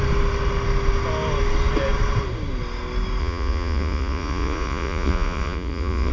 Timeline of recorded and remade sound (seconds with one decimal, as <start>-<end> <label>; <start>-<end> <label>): 0.0-3.2 recorded; 3.2-6.1 remade